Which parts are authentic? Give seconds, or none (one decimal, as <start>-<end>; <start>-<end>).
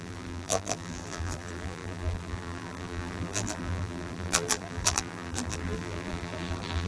none